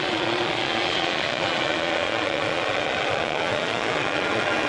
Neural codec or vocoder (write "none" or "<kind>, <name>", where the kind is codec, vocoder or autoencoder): vocoder, Vocos